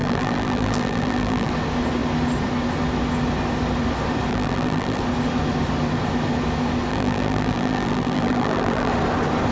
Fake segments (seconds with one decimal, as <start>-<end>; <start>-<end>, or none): 0.0-1.5; 4.3-5.0; 6.9-8.9